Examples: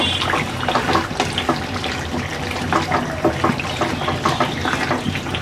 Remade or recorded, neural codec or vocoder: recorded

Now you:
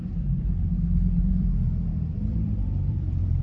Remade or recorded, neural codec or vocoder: remade, vocoder, BigVGAN v2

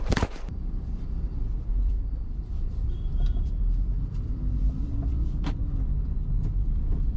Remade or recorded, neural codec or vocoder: remade, vocoder, BigVGAN v2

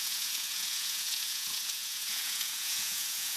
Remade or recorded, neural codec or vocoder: remade, vocoder, Vocos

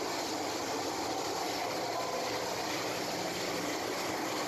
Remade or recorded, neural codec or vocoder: recorded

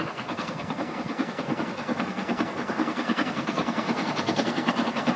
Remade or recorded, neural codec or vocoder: remade, codec, SNAC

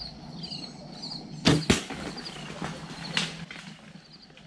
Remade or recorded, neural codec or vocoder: recorded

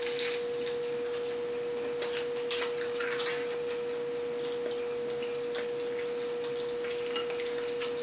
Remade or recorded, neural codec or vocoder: recorded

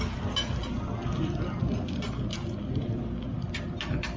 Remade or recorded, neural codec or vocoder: recorded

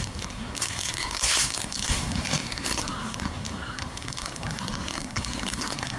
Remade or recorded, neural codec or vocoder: remade, codec, SNAC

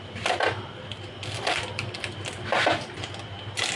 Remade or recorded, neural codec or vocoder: recorded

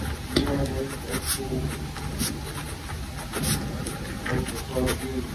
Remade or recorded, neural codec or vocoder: recorded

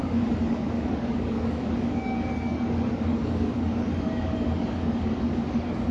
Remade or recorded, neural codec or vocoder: remade, codec, DAC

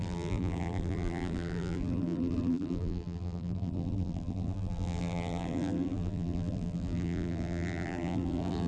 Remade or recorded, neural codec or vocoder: remade, vocoder, BigVGAN v2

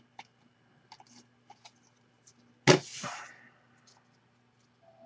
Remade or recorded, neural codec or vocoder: recorded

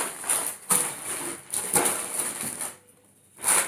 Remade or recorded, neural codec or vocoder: recorded